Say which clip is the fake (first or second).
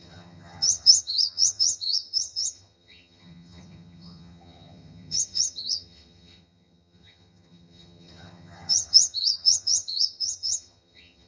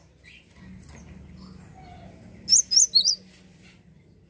first